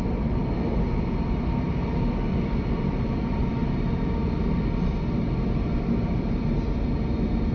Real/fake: real